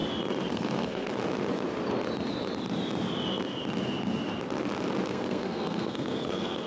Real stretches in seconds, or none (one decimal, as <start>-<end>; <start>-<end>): 0.0-0.5; 1.1-5.1